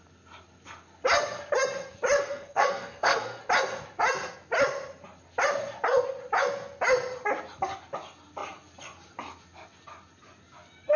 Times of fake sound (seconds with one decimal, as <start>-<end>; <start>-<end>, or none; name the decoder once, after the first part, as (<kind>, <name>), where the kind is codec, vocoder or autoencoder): 2.2-3.4 (codec, SNAC)